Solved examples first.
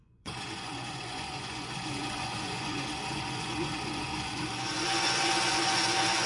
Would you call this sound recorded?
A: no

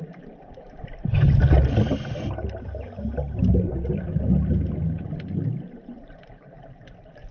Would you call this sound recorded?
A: yes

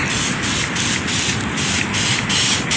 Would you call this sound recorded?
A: yes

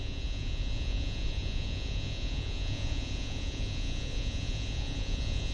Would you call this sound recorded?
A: no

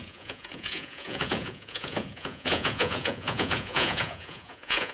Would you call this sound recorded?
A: no